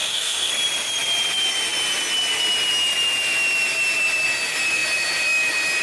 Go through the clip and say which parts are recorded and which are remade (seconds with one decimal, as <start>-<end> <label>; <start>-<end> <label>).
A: 0.0-0.5 remade; 0.5-5.8 recorded